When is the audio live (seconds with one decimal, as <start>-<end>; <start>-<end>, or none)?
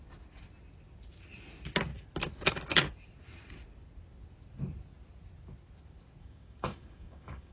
0.0-6.2